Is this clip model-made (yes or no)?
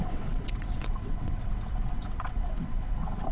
yes